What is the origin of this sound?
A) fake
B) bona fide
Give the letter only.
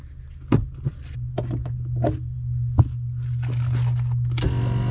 B